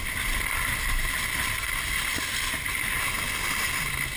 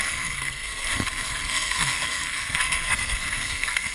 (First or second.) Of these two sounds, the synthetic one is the second